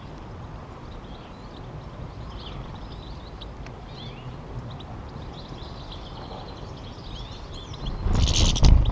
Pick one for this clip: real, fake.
real